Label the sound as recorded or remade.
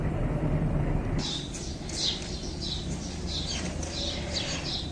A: recorded